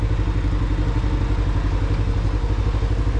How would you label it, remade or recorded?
recorded